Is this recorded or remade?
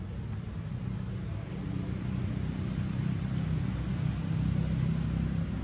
recorded